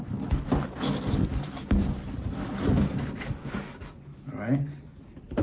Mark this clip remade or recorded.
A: remade